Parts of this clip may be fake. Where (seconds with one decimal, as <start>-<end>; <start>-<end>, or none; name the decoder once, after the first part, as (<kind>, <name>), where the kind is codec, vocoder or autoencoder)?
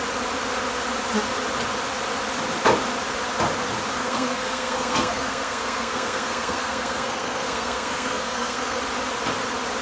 4.0-8.8 (codec, SNAC)